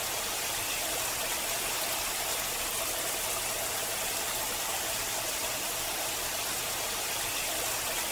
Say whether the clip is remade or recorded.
recorded